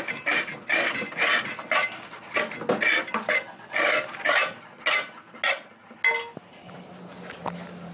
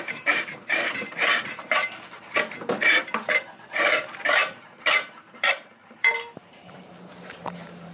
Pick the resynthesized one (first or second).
second